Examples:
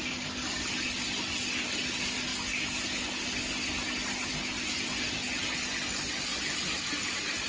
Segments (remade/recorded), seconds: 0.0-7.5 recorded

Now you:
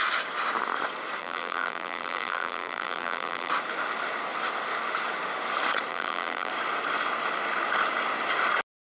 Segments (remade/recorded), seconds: 0.0-1.2 recorded; 1.2-3.5 remade; 3.5-5.9 recorded; 5.9-6.5 remade; 6.5-8.9 recorded

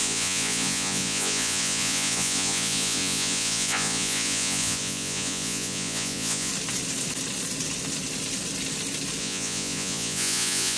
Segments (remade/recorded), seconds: 0.0-6.5 remade; 6.5-9.2 recorded; 9.2-10.8 remade